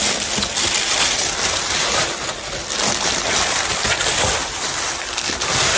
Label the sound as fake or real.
real